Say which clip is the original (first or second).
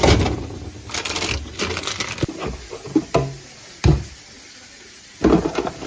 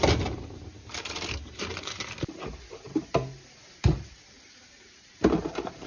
first